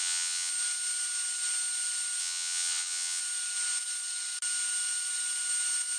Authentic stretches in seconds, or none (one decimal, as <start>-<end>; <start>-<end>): 0.5-2.2; 3.2-6.0

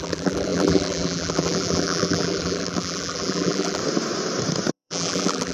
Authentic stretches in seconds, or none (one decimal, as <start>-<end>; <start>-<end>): 3.8-4.7

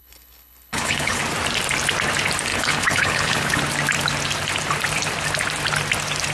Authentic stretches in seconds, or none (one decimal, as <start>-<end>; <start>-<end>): 1.2-2.5; 3.6-6.3

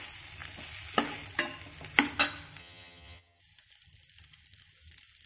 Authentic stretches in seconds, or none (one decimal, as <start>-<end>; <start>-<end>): 0.0-2.6; 3.4-5.3

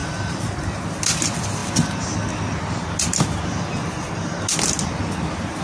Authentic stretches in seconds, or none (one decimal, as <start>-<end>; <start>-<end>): 0.8-5.6

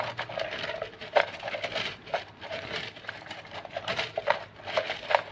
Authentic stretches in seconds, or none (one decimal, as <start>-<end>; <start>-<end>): 0.0-1.0; 4.2-5.3